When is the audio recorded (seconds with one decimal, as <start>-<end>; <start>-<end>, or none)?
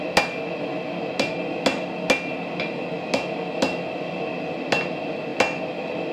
0.0-6.1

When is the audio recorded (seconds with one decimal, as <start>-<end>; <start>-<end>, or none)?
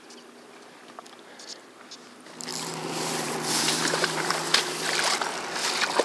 0.0-2.5; 4.3-6.0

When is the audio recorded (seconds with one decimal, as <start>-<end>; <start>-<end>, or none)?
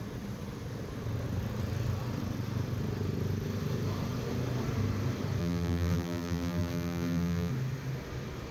0.0-5.4; 7.5-8.5